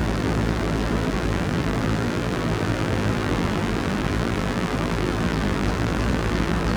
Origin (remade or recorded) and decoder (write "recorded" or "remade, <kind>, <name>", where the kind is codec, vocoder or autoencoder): remade, vocoder, BigVGAN v2